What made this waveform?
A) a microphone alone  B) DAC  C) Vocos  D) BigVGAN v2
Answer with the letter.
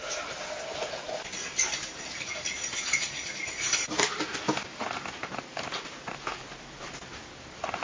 A